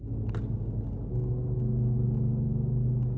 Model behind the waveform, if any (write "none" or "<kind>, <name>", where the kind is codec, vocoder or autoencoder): none